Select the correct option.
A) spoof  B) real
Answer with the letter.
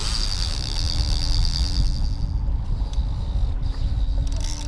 B